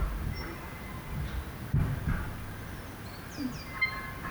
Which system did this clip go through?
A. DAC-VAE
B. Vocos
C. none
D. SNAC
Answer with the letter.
C